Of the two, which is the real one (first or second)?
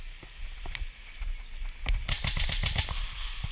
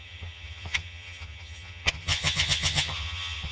first